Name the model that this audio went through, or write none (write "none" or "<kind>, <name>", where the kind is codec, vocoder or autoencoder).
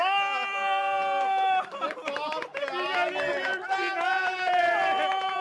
none